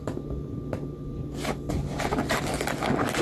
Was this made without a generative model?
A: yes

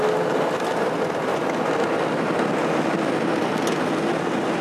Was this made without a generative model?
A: yes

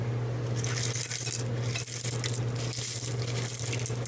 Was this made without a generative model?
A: yes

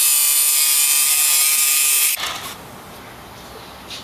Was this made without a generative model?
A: yes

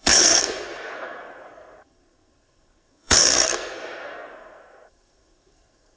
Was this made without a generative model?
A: no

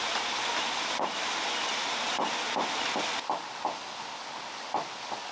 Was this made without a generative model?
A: yes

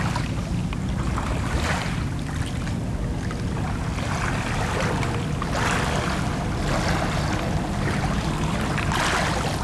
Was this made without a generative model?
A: yes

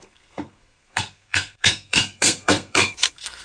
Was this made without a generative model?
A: no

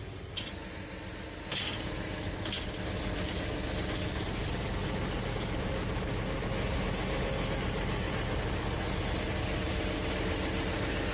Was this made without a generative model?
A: yes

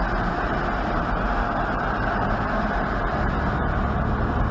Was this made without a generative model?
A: yes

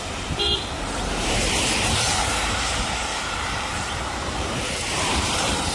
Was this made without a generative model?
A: no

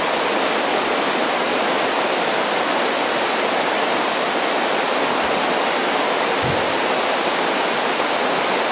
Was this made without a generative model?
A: yes